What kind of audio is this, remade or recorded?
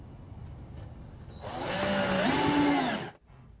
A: recorded